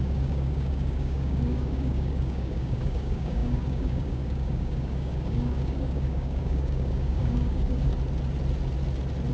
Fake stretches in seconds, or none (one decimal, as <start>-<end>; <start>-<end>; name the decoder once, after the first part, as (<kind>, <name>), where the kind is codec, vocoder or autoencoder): 0.0-7.9 (codec, DAC)